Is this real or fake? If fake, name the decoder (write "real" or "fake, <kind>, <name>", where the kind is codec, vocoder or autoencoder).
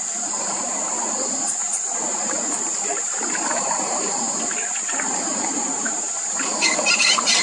fake, vocoder, BigVGAN v2